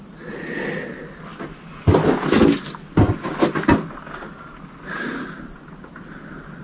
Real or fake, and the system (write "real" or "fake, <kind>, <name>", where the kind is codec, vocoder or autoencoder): real